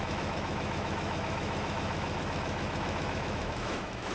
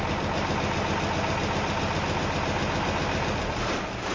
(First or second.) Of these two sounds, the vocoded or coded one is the first